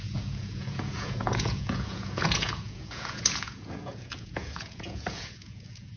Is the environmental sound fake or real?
fake